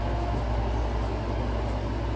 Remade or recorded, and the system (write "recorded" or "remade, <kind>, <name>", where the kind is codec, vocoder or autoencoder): recorded